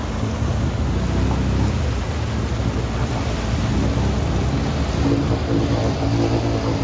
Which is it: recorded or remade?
recorded